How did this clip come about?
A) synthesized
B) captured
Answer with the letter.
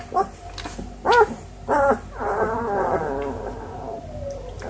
B